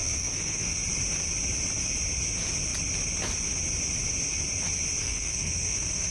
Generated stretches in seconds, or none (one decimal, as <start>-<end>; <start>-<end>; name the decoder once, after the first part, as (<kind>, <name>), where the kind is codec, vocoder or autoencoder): 0.0-0.8 (codec, SNAC); 5.0-6.1